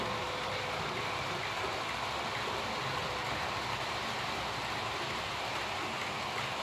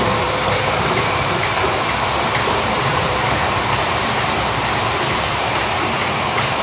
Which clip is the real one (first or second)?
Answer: first